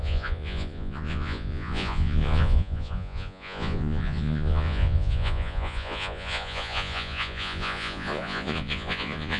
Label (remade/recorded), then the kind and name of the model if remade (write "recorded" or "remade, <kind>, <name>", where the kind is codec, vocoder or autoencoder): remade, vocoder, Vocos